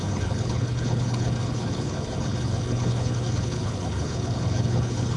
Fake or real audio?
fake